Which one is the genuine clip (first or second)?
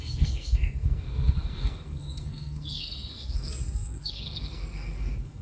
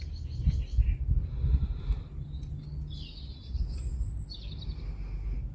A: second